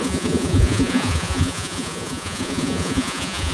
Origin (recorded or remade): remade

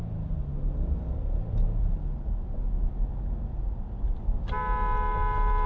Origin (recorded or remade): recorded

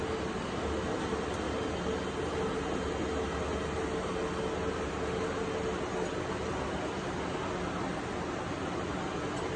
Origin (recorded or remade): recorded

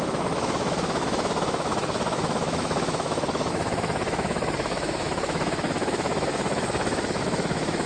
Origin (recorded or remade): remade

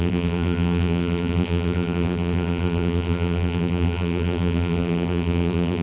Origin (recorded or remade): remade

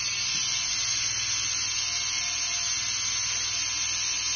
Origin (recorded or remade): recorded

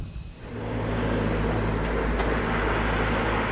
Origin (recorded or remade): recorded